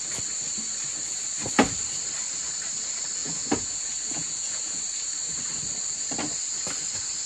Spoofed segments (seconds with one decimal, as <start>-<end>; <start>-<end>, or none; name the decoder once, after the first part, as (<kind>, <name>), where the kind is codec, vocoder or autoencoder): 3.2-4.8 (vocoder, Vocos)